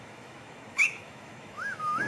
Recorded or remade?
remade